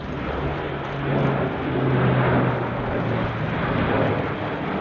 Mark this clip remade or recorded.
recorded